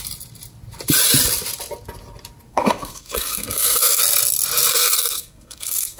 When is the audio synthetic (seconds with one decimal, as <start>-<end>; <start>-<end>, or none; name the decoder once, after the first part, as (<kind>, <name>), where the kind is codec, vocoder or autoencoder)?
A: 2.5-4.0 (codec, SNAC); 4.7-6.0